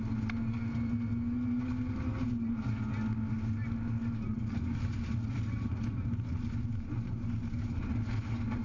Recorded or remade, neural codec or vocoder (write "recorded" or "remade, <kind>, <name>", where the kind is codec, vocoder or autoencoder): recorded